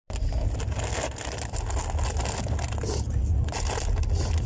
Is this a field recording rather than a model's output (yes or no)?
yes